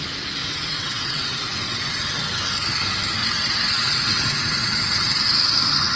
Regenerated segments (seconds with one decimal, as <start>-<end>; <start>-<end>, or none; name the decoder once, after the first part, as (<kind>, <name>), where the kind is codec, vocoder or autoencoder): 0.4-2.0 (vocoder, WaveNeXt); 3.2-5.1